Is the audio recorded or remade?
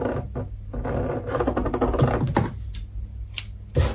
recorded